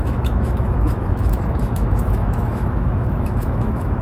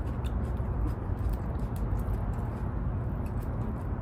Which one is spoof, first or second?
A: first